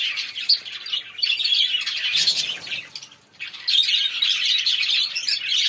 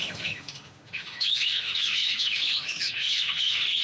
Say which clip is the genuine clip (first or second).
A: first